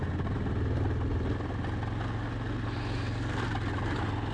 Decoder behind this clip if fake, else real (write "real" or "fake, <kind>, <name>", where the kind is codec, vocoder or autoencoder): real